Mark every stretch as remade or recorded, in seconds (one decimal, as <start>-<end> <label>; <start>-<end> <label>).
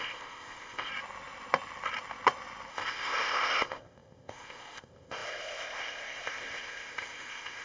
0.0-0.9 remade; 0.9-2.7 recorded; 2.7-7.6 remade